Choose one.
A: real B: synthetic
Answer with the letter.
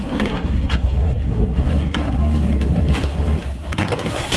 B